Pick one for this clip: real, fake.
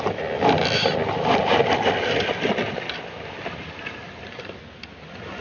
real